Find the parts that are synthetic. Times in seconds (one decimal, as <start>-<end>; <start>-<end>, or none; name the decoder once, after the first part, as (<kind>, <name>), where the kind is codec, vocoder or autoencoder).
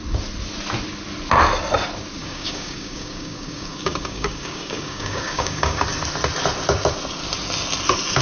2.2-5.8 (codec, DAC)